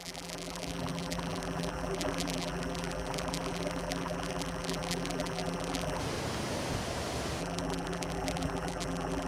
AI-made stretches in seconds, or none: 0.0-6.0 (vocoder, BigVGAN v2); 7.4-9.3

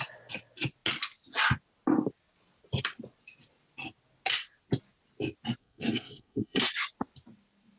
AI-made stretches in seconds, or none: 5.6-6.6 (codec, SNAC)

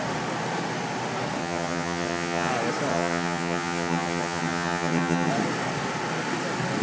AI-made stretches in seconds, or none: 1.4-2.5 (vocoder, HiFi-GAN); 2.9-5.3

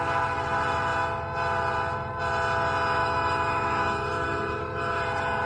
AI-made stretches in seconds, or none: 3.0-5.0 (autoencoder, DAC-VAE)

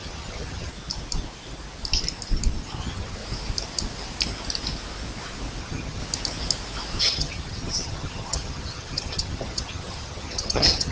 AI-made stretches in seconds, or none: 0.0-0.7 (vocoder, HiFi-GAN); 2.8-3.2; 5.6-6.0; 7.0-10.9

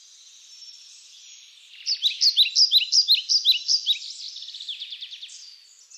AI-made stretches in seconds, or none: none

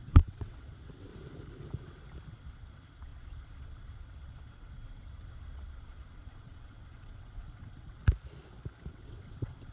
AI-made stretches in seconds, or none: 0.0-1.1 (vocoder, WaveNeXt); 2.3-8.0; 8.9-9.7